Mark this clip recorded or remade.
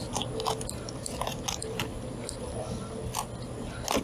recorded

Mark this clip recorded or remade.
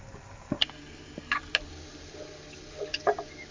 recorded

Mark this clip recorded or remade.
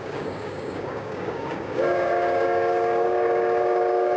remade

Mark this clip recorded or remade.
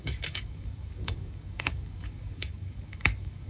remade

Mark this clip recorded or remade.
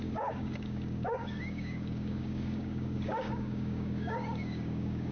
remade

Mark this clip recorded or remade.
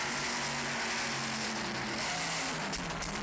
recorded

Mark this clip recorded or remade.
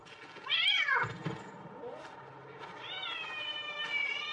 recorded